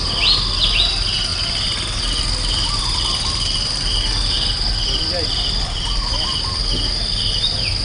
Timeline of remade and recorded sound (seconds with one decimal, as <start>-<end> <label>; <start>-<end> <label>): 0.0-7.8 recorded

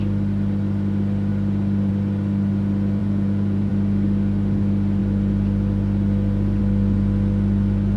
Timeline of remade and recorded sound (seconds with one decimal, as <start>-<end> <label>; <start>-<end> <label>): 0.0-3.0 recorded; 3.0-3.7 remade; 3.7-8.0 recorded

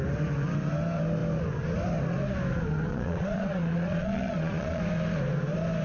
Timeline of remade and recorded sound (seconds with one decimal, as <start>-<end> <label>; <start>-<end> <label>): 0.0-2.9 recorded; 2.9-4.8 remade; 4.8-5.8 recorded

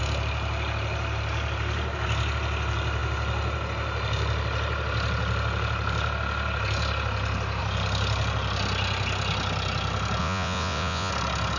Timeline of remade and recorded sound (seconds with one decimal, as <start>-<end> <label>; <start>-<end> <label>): 0.0-10.2 recorded; 10.2-11.1 remade; 11.1-11.6 recorded

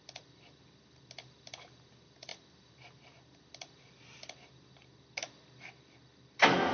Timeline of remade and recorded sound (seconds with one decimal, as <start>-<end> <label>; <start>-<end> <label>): 0.0-6.7 recorded

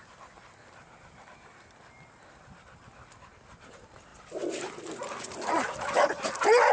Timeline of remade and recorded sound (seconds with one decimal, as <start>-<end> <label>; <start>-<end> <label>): 0.0-6.7 recorded